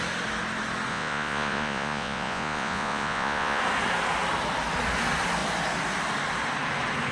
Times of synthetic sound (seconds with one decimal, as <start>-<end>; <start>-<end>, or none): 0.9-3.6